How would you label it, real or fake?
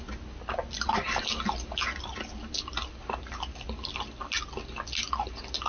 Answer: real